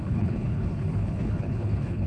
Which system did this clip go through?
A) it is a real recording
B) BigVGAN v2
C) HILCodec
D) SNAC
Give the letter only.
C